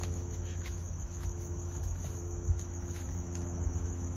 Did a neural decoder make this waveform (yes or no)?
yes